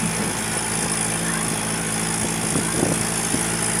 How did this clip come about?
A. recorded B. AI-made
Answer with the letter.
A